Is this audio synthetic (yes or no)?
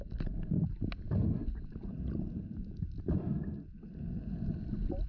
no